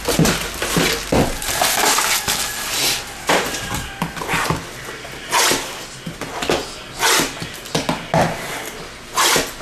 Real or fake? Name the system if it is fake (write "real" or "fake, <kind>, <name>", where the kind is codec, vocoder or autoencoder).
real